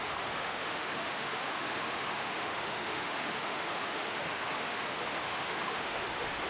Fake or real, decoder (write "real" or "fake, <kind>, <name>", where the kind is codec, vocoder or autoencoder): fake, autoencoder, DAC-VAE